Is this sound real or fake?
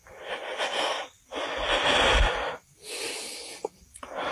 real